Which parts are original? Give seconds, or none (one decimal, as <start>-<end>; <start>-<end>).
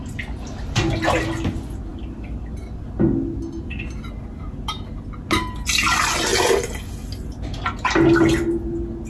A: 0.0-6.3; 6.8-9.1